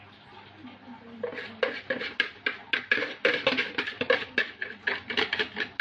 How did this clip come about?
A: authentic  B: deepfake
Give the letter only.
A